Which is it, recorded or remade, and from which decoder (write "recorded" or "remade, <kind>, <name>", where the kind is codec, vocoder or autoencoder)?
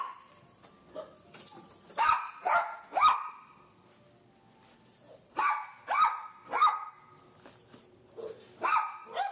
recorded